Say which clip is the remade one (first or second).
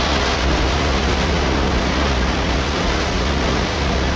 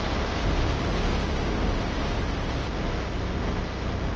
first